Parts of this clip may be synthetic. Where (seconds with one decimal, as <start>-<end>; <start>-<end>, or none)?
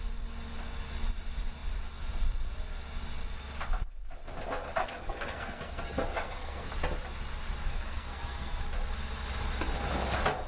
4.8-6.7; 7.7-8.6